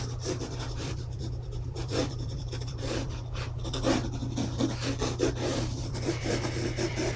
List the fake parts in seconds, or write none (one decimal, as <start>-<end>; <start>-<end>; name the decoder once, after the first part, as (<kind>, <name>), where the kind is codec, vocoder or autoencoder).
0.0-4.2 (vocoder, BigVGAN v2); 5.3-7.2